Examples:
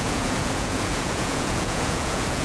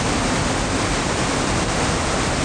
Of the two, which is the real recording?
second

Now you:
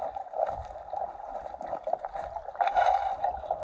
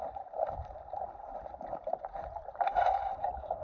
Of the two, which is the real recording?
first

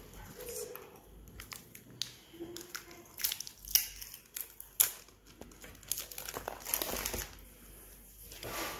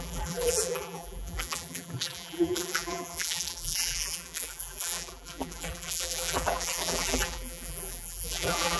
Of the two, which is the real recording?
first